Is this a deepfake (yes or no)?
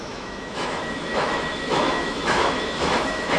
yes